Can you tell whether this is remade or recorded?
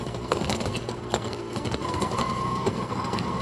remade